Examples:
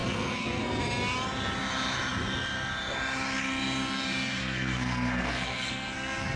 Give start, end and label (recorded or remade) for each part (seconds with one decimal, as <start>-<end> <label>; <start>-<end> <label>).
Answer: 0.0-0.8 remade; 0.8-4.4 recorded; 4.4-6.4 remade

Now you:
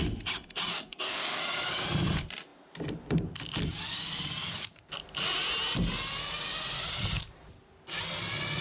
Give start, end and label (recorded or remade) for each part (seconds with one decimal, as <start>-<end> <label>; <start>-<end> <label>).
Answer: 0.0-0.7 recorded; 0.7-1.4 remade; 1.4-8.6 recorded

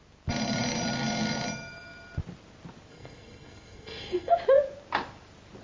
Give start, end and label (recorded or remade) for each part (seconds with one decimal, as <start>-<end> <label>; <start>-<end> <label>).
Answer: 0.0-2.9 recorded; 2.9-4.3 remade; 4.3-5.6 recorded

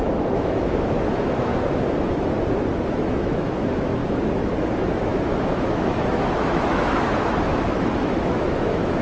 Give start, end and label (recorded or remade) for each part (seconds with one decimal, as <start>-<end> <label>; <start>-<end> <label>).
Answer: 0.0-1.5 remade; 1.5-2.9 recorded; 2.9-4.0 remade; 4.0-4.5 recorded; 4.5-9.0 remade